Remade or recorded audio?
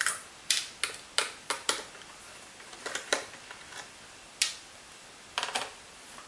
recorded